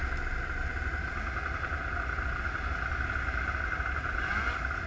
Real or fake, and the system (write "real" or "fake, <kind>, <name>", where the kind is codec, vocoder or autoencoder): real